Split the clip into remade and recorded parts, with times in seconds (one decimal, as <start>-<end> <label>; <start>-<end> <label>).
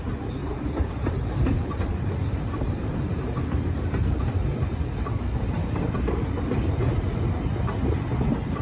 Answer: 0.0-0.4 recorded; 0.4-4.2 remade; 4.2-5.6 recorded; 5.6-7.2 remade; 7.2-8.6 recorded